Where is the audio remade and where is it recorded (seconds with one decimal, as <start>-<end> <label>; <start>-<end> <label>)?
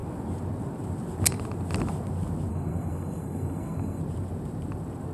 0.0-2.5 recorded; 2.5-4.0 remade; 4.0-5.1 recorded